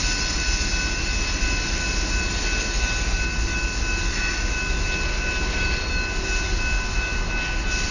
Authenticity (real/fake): real